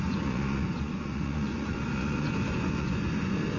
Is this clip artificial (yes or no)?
yes